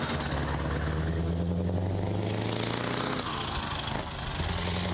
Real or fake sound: real